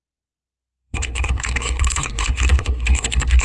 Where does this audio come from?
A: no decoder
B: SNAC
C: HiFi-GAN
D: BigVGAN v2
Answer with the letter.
B